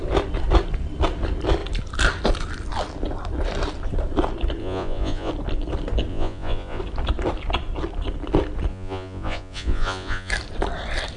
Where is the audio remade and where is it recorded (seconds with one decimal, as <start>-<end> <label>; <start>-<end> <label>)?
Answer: 0.0-4.6 recorded; 4.6-5.3 remade; 5.3-6.1 recorded; 6.1-6.8 remade; 6.8-8.7 recorded; 8.7-10.3 remade; 10.3-11.2 recorded